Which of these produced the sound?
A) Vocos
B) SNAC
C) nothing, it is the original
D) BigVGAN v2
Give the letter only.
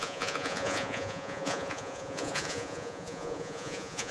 A